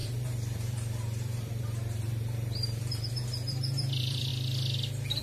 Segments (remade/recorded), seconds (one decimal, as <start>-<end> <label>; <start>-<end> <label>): 0.0-4.3 remade; 4.3-5.2 recorded